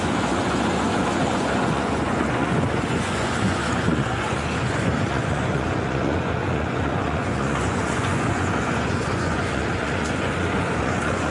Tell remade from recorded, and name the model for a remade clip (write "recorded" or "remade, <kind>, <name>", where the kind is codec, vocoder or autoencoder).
remade, vocoder, Vocos